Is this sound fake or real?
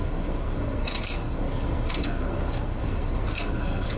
fake